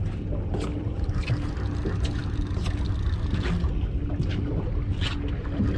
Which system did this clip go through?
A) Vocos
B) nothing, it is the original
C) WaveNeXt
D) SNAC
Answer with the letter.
B